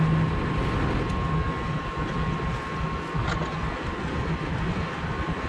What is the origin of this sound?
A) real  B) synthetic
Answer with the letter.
A